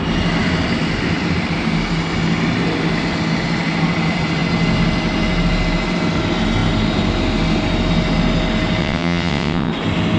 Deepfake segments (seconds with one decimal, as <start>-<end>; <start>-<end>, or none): 8.8-9.7